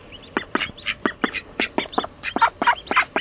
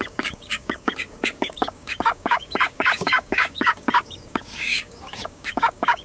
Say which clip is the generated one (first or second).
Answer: second